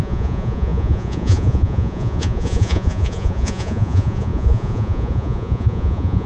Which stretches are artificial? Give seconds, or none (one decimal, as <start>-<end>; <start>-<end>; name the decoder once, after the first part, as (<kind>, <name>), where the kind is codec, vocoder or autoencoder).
0.0-6.3 (vocoder, Vocos)